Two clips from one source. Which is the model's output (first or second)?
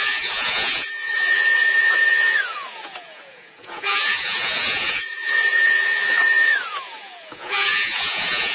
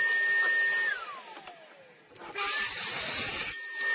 first